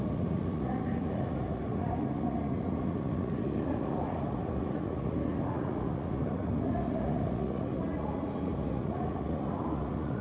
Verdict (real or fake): fake